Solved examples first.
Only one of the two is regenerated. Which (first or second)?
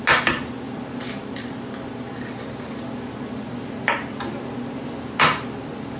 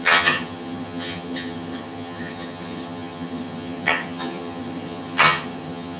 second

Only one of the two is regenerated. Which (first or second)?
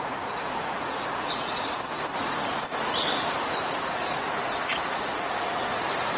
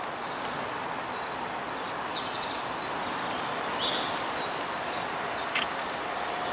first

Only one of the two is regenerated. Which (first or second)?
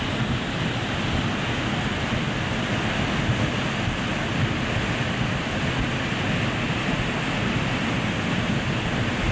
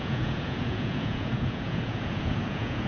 second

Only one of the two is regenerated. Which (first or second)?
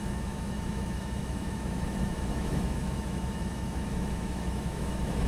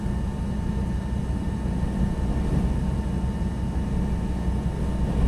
first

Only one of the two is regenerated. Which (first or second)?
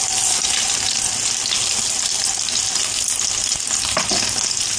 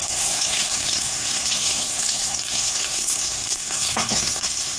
second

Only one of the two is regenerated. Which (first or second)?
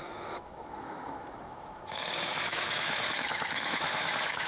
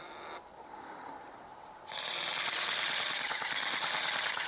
first